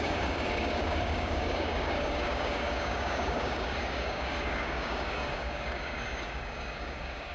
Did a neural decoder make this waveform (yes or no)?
yes